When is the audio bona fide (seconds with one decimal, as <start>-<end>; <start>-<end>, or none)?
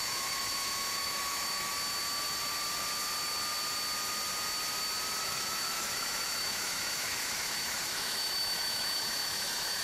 1.7-5.2